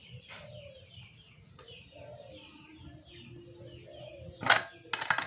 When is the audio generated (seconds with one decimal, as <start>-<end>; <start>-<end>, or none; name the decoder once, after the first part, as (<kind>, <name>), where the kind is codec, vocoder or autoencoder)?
0.0-1.8 (vocoder, BigVGAN v2)